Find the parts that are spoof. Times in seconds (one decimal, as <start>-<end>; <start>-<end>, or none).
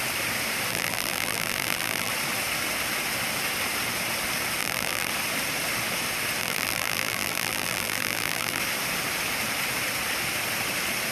0.7-2.1; 4.6-5.1; 6.4-8.6